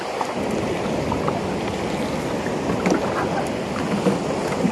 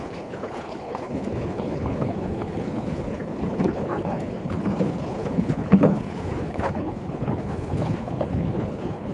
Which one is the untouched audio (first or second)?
first